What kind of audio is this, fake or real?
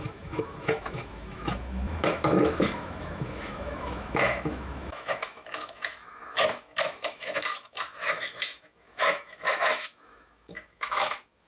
fake